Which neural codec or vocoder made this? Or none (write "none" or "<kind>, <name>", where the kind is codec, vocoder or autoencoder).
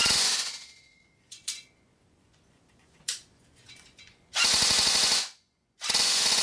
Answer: vocoder, Vocos